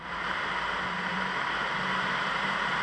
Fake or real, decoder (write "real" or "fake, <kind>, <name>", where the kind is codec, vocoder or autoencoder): real